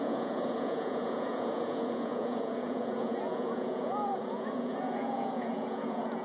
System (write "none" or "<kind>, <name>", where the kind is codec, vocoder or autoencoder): vocoder, Vocos